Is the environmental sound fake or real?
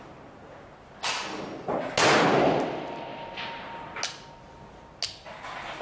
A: real